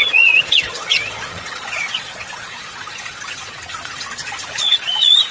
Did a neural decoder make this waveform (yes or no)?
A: yes